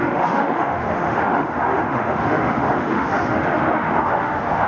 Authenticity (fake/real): fake